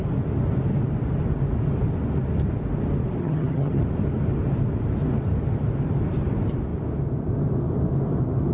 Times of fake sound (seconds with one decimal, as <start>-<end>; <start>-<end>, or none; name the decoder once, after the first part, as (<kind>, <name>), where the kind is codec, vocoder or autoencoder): 3.2-3.8 (vocoder, HiFi-GAN)